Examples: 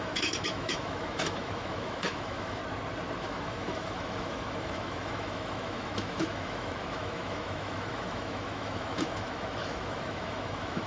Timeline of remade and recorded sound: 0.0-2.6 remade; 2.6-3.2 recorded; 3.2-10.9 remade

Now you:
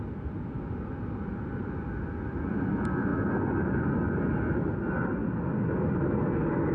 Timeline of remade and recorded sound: 0.0-6.7 recorded